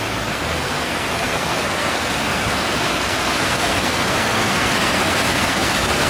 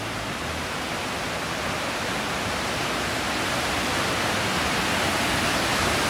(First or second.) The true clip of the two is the second